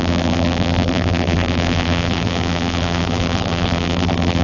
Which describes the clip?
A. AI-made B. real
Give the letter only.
A